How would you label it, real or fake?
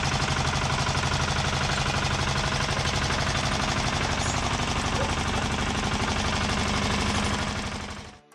real